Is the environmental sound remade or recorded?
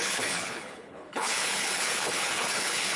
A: remade